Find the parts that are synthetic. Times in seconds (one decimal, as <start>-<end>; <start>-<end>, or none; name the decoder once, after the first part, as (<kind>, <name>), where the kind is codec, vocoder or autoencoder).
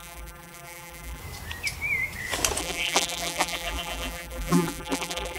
0.0-1.2 (vocoder, BigVGAN v2); 2.6-5.4